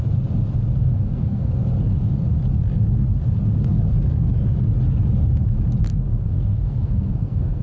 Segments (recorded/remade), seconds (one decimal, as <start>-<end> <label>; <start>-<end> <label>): 0.0-0.8 recorded; 0.8-1.5 remade; 1.5-5.9 recorded; 5.9-7.6 remade